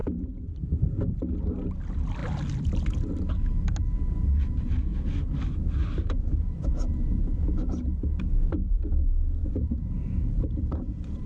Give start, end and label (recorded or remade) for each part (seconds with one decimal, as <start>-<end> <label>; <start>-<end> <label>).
0.0-0.5 remade; 0.5-9.4 recorded; 9.4-11.3 remade